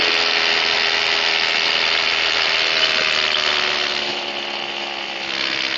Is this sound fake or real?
real